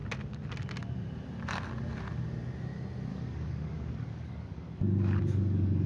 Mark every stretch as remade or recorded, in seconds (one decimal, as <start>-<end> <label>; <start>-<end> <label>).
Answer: 0.0-3.1 recorded; 3.1-5.9 remade